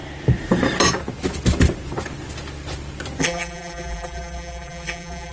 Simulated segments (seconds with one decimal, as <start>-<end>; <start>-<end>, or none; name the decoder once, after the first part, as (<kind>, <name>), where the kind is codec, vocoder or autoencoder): 3.2-5.3 (vocoder, BigVGAN v2)